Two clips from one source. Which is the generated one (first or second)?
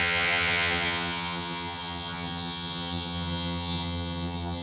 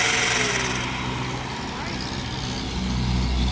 first